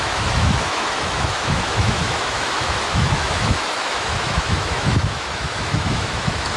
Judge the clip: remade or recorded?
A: remade